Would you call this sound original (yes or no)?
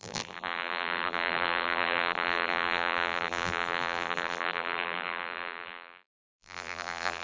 no